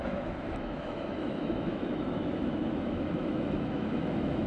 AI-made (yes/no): yes